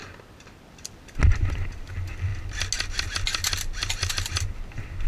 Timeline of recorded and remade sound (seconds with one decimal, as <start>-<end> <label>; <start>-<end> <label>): 0.0-5.1 recorded